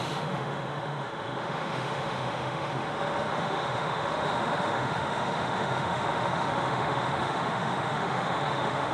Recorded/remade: remade